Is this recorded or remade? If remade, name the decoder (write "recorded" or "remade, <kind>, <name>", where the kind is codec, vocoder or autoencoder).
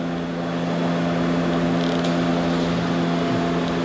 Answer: recorded